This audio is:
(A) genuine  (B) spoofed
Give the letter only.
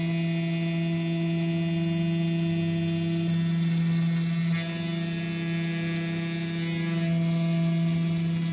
A